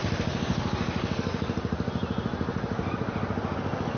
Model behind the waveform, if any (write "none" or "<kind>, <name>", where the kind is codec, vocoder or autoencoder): none